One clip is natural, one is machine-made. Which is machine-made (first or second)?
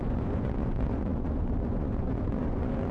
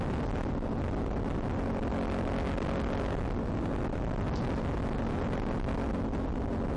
first